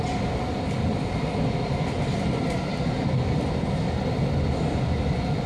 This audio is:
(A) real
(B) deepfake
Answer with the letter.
A